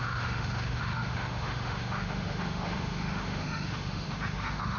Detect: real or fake fake